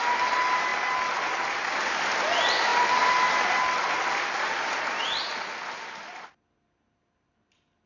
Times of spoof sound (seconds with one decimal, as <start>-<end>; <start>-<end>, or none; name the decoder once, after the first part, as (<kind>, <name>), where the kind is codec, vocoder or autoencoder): none